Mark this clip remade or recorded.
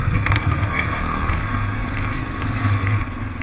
remade